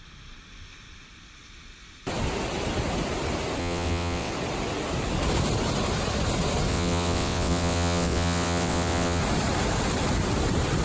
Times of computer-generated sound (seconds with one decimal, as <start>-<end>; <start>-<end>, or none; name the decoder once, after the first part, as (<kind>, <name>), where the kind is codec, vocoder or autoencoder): 3.6-4.3 (vocoder, WaveNeXt); 6.7-9.2